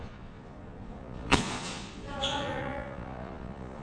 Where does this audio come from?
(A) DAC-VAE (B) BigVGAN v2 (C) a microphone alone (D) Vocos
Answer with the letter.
D